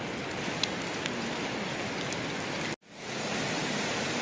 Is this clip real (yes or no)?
yes